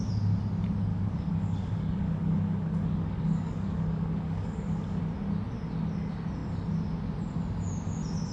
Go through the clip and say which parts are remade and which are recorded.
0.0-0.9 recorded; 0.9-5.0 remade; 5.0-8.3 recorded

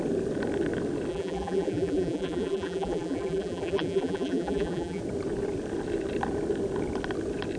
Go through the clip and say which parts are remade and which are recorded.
0.0-1.1 recorded; 1.1-5.0 remade; 5.0-7.6 recorded

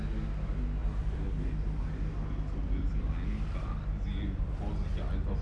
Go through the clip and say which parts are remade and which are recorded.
0.0-0.8 recorded; 0.8-3.1 remade; 3.1-3.6 recorded; 3.6-4.7 remade; 4.7-5.4 recorded

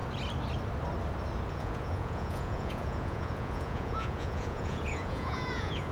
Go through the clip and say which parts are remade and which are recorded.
0.0-1.5 recorded; 1.5-5.9 remade

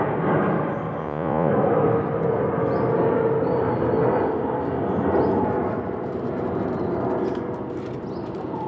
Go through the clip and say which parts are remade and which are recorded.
0.0-1.0 recorded; 1.0-1.5 remade; 1.5-8.7 recorded

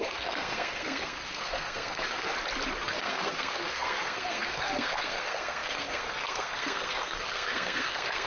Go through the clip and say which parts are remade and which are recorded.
0.0-2.3 remade; 2.3-2.8 recorded; 2.8-8.3 remade

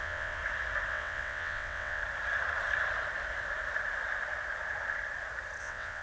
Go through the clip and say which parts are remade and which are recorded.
0.0-0.4 remade; 0.4-0.9 recorded; 0.9-2.0 remade; 2.0-5.6 recorded; 5.6-6.0 remade

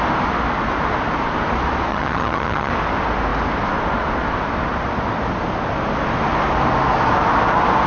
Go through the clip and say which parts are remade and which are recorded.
0.0-1.9 recorded; 1.9-2.7 remade; 2.7-7.9 recorded